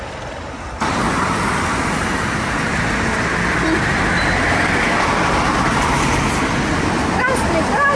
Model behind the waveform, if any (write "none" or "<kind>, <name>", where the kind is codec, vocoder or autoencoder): none